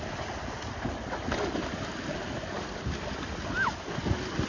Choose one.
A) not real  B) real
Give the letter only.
B